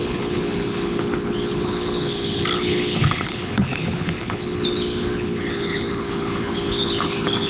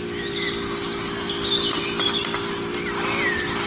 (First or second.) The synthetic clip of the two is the first